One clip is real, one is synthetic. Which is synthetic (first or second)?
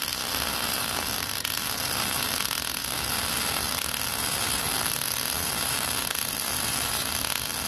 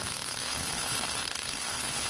second